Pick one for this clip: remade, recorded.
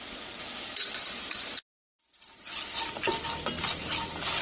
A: recorded